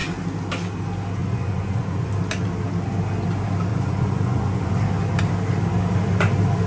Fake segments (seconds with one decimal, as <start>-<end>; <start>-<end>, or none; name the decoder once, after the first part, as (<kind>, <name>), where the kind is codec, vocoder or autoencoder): 1.2-2.1 (vocoder, Vocos); 3.7-4.7